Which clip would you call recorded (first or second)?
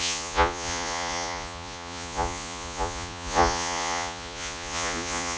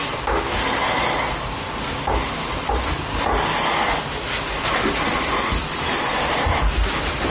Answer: second